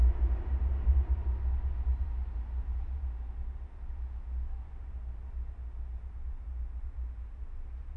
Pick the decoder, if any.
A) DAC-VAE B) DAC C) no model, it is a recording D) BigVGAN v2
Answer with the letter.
C